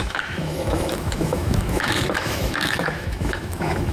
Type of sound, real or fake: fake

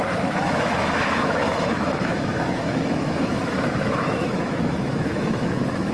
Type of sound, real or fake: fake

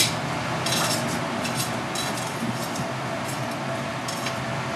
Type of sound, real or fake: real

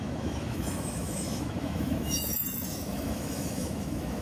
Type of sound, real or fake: fake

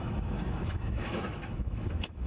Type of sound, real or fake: fake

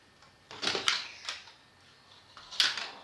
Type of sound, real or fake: real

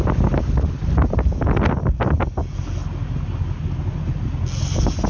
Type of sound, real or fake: real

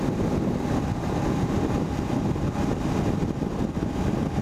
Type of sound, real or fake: real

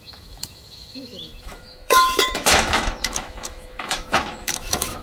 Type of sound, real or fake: fake